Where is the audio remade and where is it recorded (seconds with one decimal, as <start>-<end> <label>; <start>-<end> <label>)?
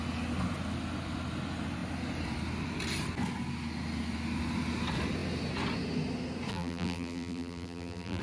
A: 0.0-6.5 recorded; 6.5-8.2 remade